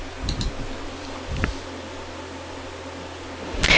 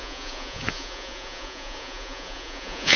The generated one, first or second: second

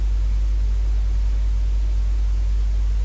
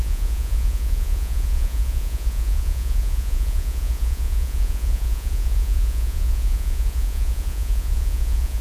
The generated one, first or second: second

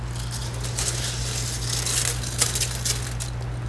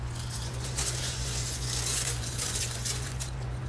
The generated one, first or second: second